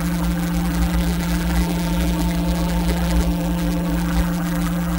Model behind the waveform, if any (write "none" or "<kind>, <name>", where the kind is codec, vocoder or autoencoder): vocoder, BigVGAN v2